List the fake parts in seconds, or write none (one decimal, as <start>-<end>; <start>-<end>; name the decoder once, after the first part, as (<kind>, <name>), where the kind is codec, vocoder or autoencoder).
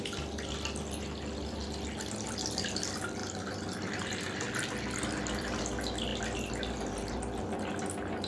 3.2-5.6 (vocoder, BigVGAN v2)